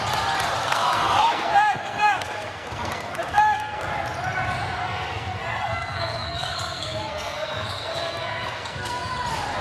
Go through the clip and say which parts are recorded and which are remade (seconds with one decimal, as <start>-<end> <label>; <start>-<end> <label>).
0.0-0.6 recorded; 0.6-3.9 remade; 3.9-4.8 recorded; 4.8-9.1 remade; 9.1-9.6 recorded